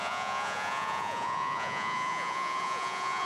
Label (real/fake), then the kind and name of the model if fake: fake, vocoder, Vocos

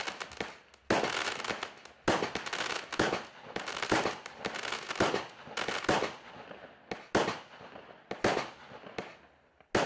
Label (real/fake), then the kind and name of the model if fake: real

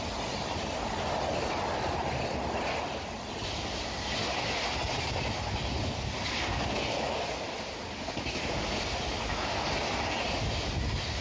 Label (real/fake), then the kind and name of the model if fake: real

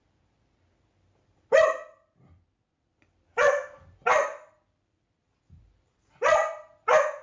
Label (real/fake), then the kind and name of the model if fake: real